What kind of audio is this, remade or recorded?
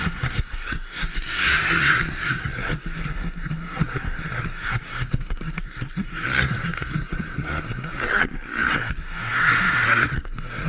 remade